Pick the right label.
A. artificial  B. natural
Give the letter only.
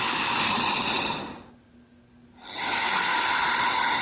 B